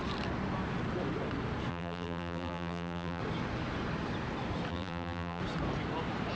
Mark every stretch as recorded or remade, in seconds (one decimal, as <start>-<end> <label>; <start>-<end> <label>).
0.0-1.7 recorded; 1.7-3.2 remade; 3.2-4.7 recorded; 4.7-5.4 remade; 5.4-6.4 recorded